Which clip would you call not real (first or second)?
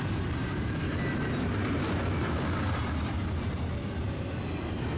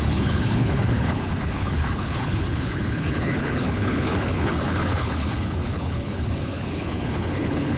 second